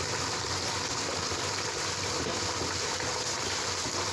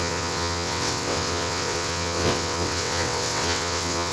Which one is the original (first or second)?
first